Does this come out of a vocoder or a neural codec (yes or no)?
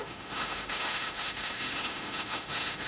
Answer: yes